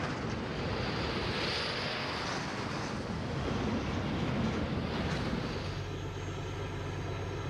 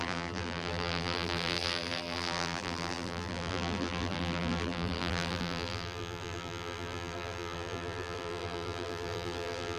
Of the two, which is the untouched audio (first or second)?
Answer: first